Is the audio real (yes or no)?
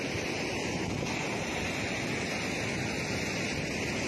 yes